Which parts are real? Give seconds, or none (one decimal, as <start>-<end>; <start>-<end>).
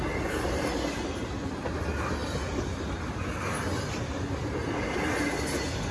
0.0-2.2; 2.8-5.9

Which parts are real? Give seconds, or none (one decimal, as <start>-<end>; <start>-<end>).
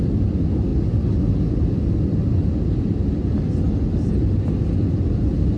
0.0-5.6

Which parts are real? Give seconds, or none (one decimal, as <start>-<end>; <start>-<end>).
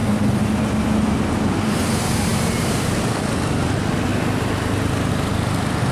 0.0-1.5; 4.1-5.1